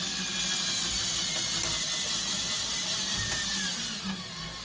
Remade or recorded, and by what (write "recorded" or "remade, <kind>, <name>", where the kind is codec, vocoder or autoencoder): recorded